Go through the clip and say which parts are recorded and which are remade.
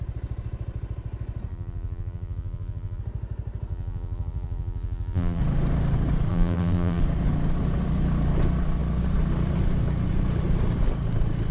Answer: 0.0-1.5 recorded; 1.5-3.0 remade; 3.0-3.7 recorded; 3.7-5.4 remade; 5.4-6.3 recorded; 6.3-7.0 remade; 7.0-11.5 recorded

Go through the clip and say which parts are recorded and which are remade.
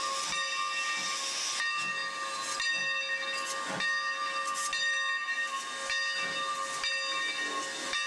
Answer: 0.0-8.1 recorded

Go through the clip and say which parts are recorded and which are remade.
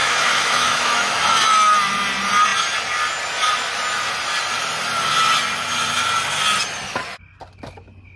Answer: 0.0-1.2 remade; 1.2-8.2 recorded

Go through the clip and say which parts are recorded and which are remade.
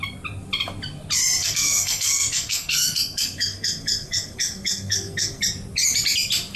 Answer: 0.0-1.4 recorded; 1.4-5.4 remade; 5.4-6.6 recorded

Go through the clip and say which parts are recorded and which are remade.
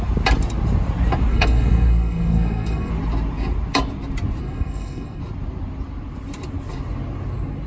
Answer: 0.0-1.3 recorded; 1.3-2.9 remade; 2.9-4.4 recorded; 4.4-5.2 remade; 5.2-7.7 recorded